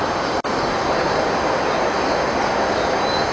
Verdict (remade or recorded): recorded